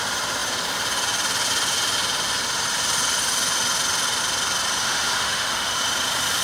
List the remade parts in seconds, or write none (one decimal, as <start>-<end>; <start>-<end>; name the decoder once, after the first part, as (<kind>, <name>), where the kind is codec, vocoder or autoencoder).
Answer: 4.8-5.8 (autoencoder, DAC-VAE)